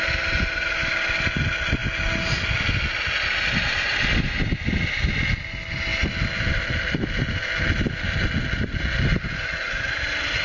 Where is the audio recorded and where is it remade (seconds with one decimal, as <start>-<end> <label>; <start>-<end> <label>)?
0.0-10.4 recorded